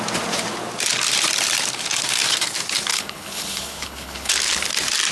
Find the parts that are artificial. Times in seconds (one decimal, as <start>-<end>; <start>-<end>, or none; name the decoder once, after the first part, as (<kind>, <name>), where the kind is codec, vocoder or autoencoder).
2.9-4.3 (codec, HILCodec)